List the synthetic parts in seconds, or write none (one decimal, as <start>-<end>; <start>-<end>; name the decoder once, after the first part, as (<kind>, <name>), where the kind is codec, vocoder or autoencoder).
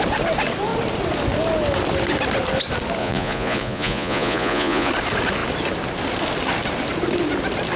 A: 3.0-4.9 (vocoder, Vocos)